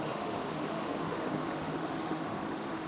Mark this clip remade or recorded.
remade